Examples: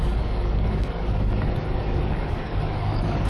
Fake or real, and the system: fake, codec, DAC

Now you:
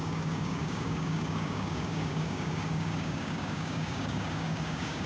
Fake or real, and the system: fake, codec, DAC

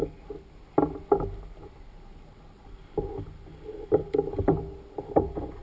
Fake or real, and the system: real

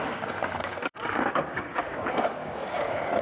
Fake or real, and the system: fake, codec, DAC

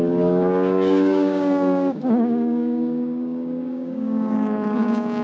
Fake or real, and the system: fake, codec, DAC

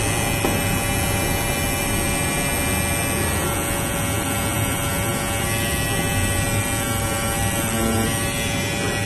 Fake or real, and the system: real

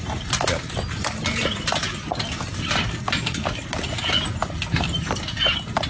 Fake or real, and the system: real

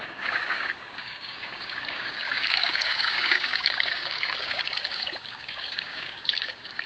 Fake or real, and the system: fake, codec, DAC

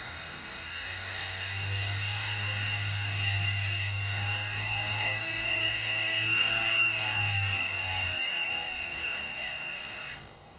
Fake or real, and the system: fake, codec, DAC